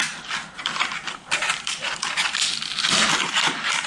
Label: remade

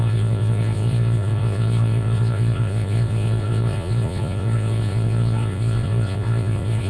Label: remade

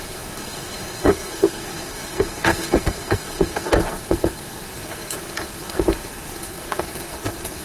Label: remade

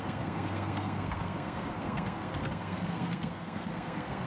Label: remade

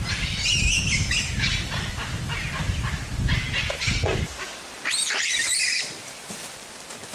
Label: recorded